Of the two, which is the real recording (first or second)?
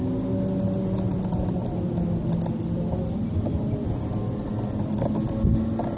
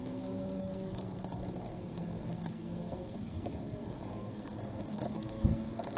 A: first